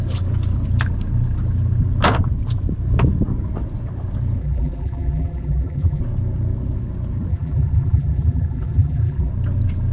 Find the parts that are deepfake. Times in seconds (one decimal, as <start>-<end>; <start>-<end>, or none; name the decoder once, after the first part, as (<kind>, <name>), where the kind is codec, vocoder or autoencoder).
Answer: 4.4-6.0 (vocoder, BigVGAN v2); 7.3-9.3